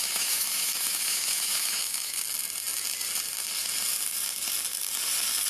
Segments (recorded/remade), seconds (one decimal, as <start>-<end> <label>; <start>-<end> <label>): 0.0-2.2 remade; 2.2-5.5 recorded